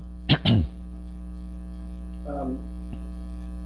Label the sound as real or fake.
real